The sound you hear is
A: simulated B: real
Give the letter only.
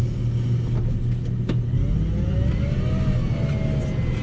B